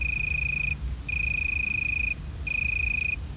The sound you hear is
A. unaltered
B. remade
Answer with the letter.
A